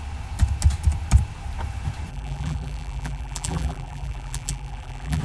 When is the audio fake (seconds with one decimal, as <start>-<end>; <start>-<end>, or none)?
2.1-5.2